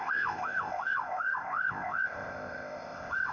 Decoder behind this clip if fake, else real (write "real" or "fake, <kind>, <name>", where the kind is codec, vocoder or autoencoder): fake, codec, ZipCodec